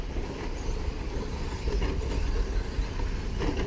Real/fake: real